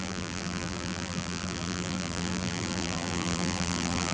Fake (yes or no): yes